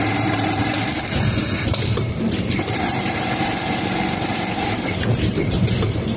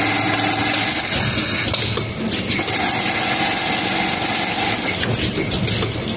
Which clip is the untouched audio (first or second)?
second